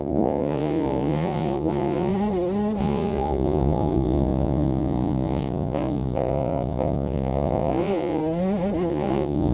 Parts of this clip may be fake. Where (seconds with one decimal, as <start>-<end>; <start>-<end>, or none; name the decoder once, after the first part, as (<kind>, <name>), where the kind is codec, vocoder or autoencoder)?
0.0-2.1 (vocoder, Vocos); 2.8-8.2; 8.9-9.5